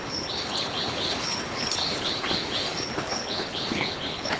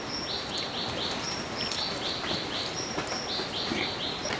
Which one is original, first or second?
second